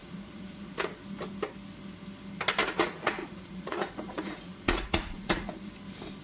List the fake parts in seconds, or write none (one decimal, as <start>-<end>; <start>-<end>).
0.0-0.9; 2.6-5.7